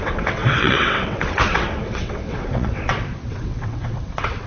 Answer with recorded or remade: remade